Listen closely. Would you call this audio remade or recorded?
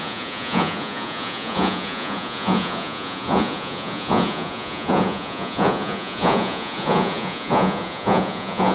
remade